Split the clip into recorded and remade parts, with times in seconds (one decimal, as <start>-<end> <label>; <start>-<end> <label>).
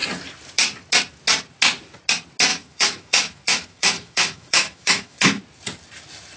0.0-2.5 recorded; 2.5-5.4 remade; 5.4-6.4 recorded